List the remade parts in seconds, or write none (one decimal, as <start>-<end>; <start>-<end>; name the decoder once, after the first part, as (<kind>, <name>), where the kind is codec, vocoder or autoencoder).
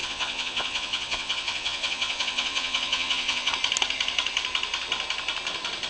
0.0-3.5 (vocoder, Vocos)